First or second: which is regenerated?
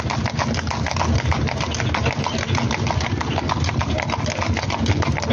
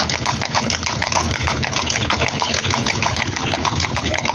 second